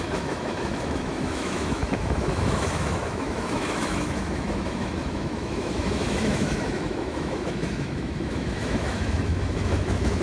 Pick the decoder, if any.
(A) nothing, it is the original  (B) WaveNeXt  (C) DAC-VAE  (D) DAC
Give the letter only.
C